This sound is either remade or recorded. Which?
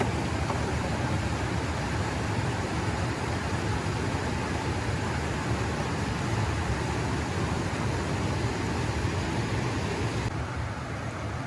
recorded